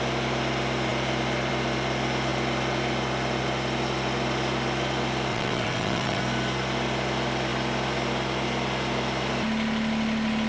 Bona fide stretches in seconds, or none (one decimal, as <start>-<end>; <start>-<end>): 0.0-5.3; 6.2-10.5